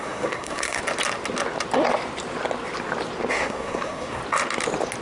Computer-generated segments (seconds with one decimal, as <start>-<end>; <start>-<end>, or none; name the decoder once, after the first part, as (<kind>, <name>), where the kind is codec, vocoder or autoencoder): 0.0-0.8 (codec, SNAC); 3.3-4.2